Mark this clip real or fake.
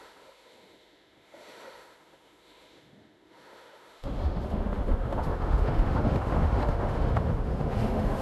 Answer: fake